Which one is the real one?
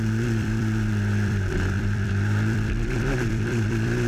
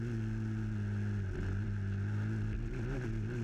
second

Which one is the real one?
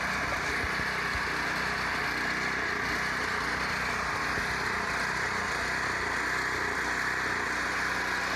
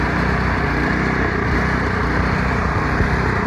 first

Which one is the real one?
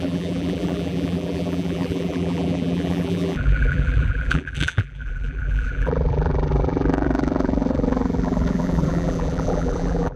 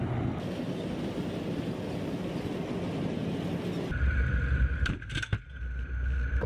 second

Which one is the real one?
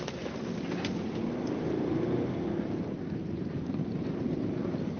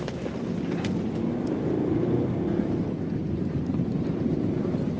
first